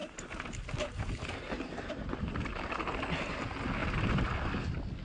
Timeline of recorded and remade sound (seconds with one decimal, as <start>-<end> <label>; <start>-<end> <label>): 0.0-3.0 remade; 3.0-3.8 recorded; 3.8-4.3 remade; 4.3-5.0 recorded